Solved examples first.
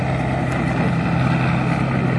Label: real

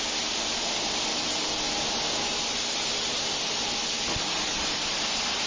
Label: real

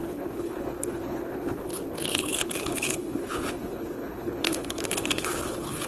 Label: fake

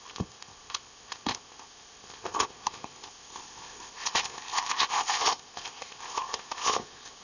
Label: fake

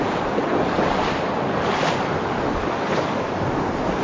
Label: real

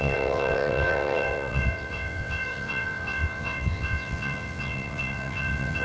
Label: fake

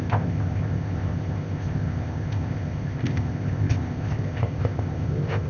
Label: fake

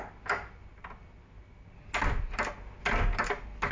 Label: real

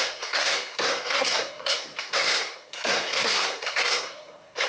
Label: fake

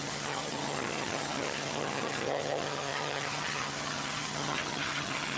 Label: fake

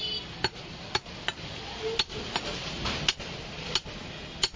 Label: real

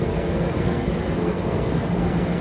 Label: fake